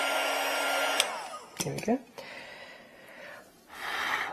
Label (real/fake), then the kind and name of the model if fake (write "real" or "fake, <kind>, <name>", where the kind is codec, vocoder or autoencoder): real